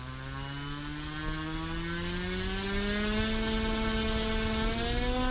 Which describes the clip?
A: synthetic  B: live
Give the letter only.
B